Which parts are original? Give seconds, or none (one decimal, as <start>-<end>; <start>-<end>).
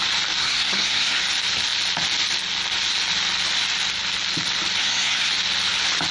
0.0-0.4; 1.2-4.8; 5.3-6.1